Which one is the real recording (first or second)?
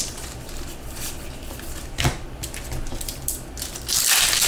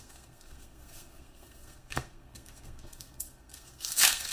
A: first